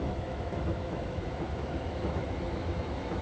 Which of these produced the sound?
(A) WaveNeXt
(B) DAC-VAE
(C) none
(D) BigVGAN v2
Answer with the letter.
B